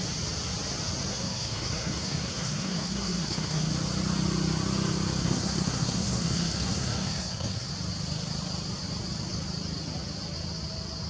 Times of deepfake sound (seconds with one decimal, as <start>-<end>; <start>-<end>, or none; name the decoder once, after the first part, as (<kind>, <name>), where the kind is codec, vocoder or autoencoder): 1.1-3.7 (codec, SNAC); 5.2-7.7